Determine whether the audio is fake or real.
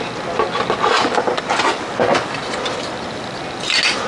real